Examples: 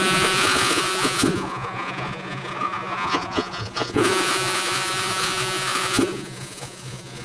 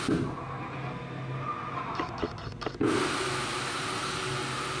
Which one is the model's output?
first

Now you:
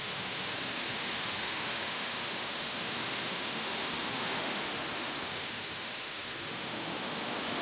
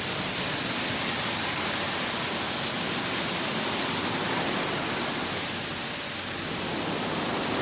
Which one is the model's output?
first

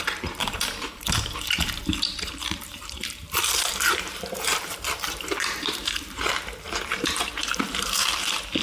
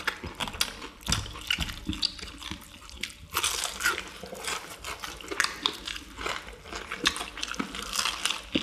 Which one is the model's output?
first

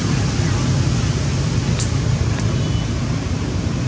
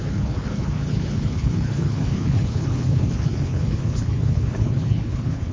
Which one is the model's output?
second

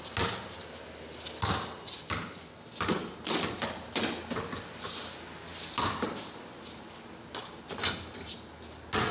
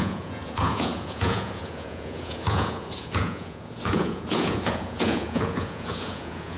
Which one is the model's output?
second